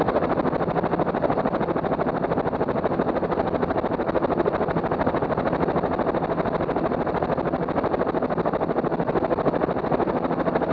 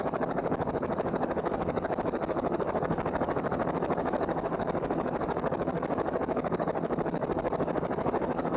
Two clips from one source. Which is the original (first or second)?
first